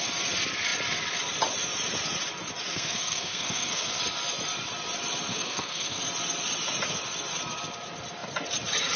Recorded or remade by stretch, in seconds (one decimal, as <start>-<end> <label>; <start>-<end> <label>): 0.0-2.7 recorded; 2.7-4.0 remade; 4.0-5.3 recorded; 5.3-6.0 remade; 6.0-9.0 recorded